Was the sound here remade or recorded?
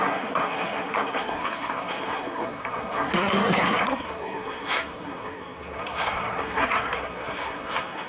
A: remade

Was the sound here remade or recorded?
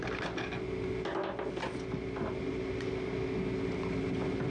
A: recorded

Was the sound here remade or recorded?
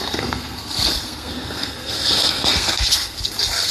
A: remade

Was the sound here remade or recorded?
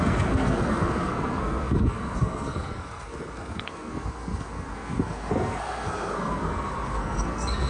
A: remade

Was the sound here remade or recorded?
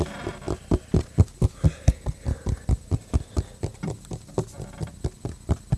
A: recorded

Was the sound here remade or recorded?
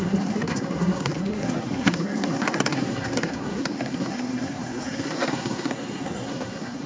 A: remade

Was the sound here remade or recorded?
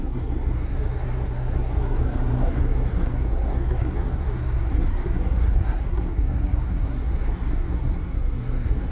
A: remade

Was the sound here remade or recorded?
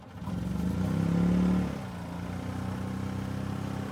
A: recorded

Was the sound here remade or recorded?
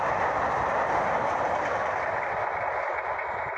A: recorded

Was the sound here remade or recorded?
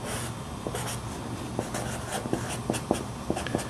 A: recorded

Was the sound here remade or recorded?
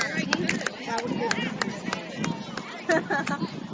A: recorded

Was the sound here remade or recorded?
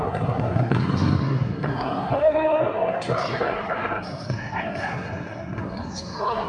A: remade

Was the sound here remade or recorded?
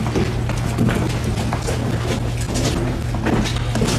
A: recorded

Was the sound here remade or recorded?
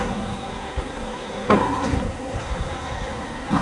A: remade